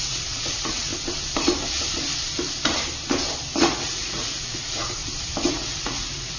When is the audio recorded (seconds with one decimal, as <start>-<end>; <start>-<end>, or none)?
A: 0.9-3.6; 5.0-5.5